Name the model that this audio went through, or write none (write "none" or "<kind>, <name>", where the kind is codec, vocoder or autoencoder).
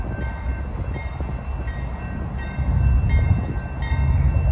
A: none